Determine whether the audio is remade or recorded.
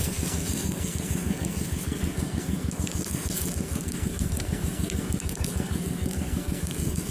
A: remade